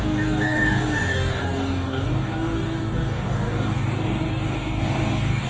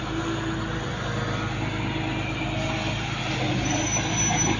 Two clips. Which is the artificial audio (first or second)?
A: first